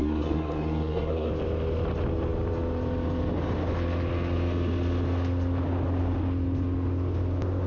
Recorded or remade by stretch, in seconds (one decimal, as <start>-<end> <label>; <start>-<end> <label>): 0.0-1.3 remade; 1.3-7.7 recorded